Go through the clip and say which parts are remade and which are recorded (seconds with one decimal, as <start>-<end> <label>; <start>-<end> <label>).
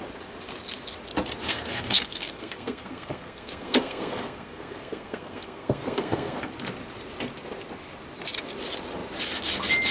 0.0-1.4 recorded; 1.4-6.5 remade; 6.5-9.9 recorded